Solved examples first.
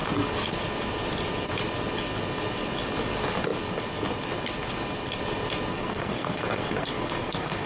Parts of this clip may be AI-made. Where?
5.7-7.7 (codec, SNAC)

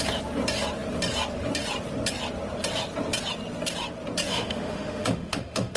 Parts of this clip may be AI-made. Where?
4.3-5.8 (autoencoder, DAC-VAE)

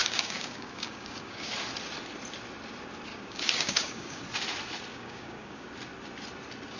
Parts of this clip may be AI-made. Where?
0.0-1.5 (codec, DAC); 3.1-4.2; 4.9-5.7

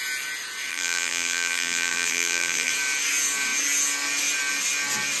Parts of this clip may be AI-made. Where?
0.7-2.7 (vocoder, BigVGAN v2)

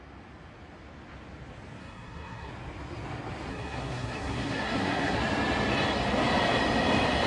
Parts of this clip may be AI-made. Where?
1.8-2.5 (codec, SNAC); 3.5-5.2

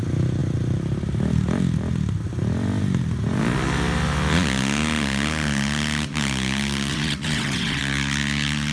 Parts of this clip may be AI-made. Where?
6.9-7.8 (vocoder, WaveNeXt)